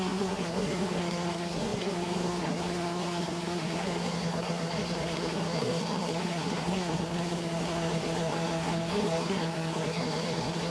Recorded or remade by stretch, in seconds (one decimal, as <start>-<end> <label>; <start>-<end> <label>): 0.0-10.7 remade